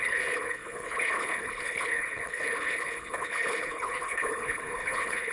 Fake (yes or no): yes